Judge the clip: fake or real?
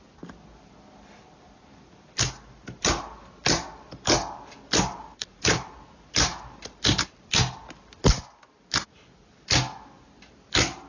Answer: real